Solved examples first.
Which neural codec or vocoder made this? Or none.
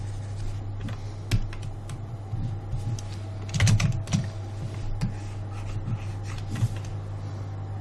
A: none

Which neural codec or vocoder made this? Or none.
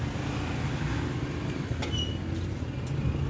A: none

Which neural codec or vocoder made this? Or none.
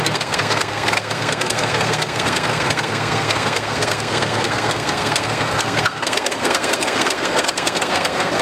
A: codec, SNAC